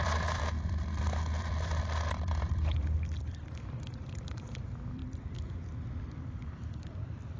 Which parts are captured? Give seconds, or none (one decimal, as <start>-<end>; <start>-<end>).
none